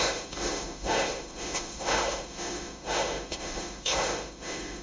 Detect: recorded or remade remade